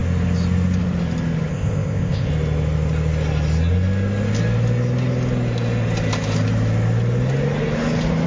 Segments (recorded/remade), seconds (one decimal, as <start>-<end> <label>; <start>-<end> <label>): 0.0-1.5 recorded; 1.5-2.3 remade; 2.3-8.3 recorded